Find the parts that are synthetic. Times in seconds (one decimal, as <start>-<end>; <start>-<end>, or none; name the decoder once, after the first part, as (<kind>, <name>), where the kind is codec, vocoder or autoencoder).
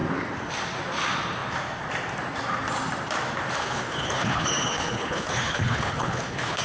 3.6-6.6 (codec, HILCodec)